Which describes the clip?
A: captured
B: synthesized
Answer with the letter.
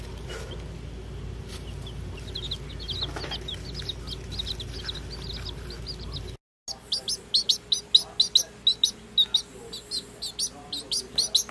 A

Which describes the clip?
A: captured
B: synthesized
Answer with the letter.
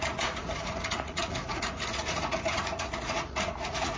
B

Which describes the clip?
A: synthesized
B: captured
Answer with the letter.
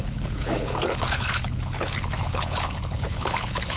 A